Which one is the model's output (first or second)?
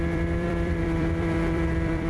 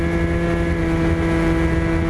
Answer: first